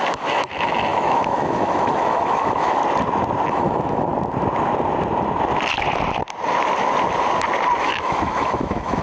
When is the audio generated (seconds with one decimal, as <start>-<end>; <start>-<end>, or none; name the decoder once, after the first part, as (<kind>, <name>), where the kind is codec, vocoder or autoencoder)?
0.0-2.8 (autoencoder, DAC-VAE); 3.5-4.1; 7.8-9.0